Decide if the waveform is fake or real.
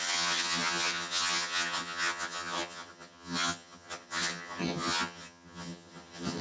fake